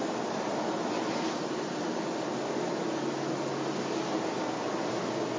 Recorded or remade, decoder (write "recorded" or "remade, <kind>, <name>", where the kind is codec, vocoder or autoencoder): recorded